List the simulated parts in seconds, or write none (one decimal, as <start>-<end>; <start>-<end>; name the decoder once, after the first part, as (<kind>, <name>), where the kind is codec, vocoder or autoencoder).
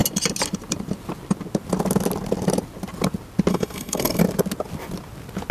3.5-4.2 (codec, SNAC)